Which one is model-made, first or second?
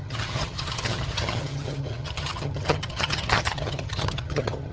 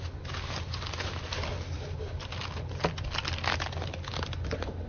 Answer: first